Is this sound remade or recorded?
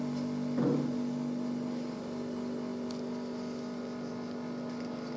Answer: recorded